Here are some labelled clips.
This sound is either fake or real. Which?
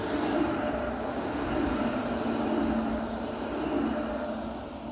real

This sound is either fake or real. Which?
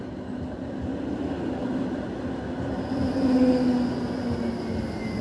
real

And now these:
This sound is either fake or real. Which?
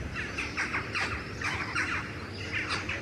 real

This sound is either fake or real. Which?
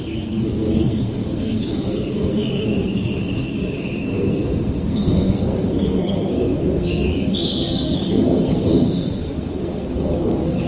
fake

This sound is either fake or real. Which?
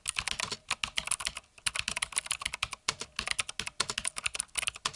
real